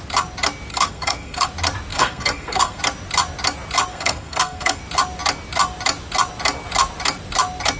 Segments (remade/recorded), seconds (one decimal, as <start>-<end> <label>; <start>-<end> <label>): 0.0-0.7 recorded; 0.7-1.5 remade; 1.5-1.9 recorded; 1.9-2.8 remade; 2.8-3.9 recorded; 3.9-4.8 remade; 4.8-7.8 recorded